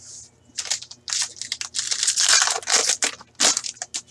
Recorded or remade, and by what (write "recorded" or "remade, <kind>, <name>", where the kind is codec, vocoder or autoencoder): recorded